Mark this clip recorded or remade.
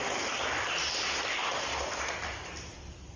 recorded